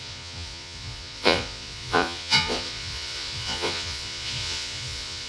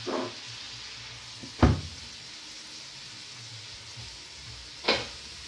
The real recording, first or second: second